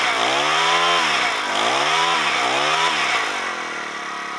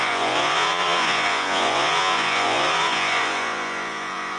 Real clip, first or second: first